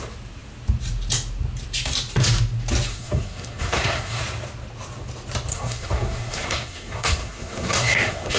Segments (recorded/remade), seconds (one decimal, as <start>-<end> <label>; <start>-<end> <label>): 0.0-2.9 recorded; 2.9-4.2 remade; 4.2-5.5 recorded; 5.5-8.4 remade